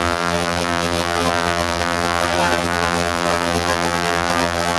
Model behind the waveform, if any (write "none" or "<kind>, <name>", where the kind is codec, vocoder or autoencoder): vocoder, BigVGAN v2